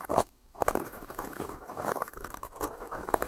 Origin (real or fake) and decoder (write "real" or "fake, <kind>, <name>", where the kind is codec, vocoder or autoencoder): fake, codec, DAC